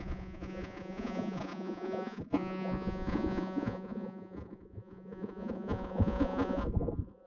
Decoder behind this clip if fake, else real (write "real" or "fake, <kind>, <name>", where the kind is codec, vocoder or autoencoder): fake, vocoder, Vocos